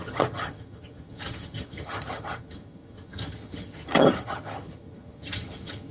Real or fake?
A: fake